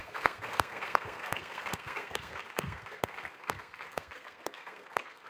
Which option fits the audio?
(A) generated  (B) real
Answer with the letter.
A